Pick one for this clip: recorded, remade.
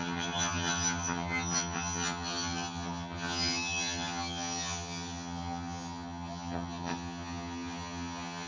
remade